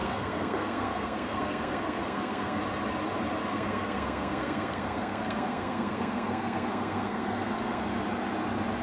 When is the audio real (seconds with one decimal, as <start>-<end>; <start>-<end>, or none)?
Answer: 2.6-3.5; 7.8-8.8